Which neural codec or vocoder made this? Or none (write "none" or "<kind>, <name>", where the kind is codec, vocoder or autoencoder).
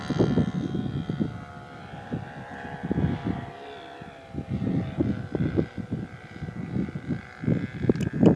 none